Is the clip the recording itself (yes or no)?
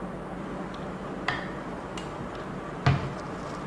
yes